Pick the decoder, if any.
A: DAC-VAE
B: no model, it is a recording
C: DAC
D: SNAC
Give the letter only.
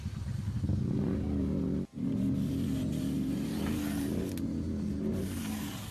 B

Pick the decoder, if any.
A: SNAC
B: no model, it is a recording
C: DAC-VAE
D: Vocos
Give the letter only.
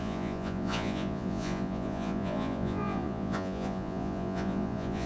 D